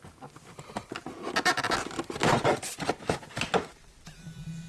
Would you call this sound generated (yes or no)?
no